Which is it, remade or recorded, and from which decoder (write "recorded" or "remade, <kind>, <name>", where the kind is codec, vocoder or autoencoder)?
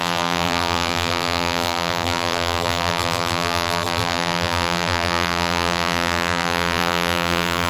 remade, vocoder, BigVGAN v2